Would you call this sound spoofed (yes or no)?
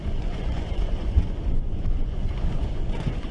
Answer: yes